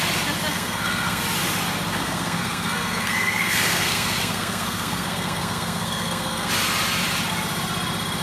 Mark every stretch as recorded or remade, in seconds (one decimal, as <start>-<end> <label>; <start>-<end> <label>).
0.0-0.5 recorded; 0.5-1.2 remade; 1.2-1.9 recorded; 1.9-6.5 remade; 6.5-8.2 recorded